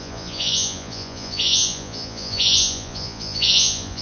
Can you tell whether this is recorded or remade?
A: remade